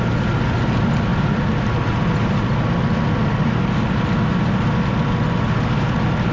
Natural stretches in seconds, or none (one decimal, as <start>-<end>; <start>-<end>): 0.0-6.3